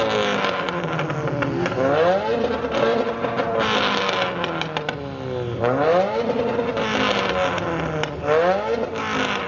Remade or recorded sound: recorded